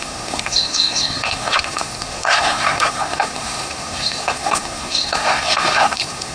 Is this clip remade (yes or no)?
yes